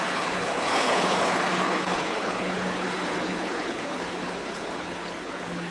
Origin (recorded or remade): remade